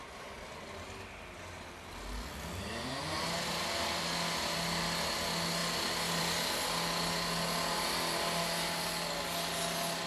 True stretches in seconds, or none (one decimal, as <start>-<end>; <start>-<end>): 0.0-10.1